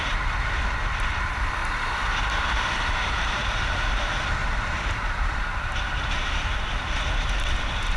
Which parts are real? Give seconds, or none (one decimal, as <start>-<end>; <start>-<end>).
0.0-1.6; 3.6-4.4; 6.5-8.0